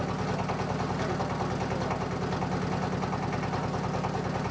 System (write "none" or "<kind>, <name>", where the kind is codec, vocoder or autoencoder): none